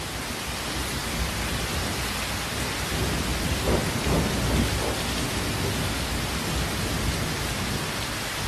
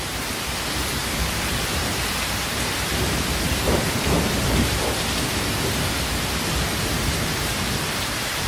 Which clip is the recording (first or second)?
first